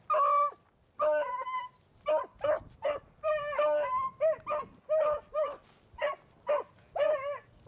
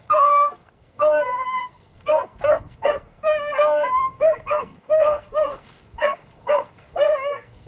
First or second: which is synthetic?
second